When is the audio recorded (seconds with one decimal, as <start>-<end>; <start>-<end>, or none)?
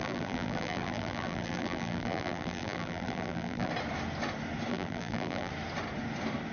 3.7-4.7; 5.5-6.5